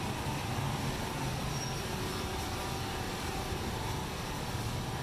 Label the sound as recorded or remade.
recorded